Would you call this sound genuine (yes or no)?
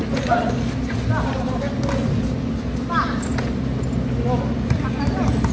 yes